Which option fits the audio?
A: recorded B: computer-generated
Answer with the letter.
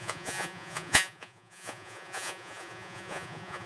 B